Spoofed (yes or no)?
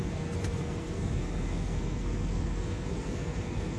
yes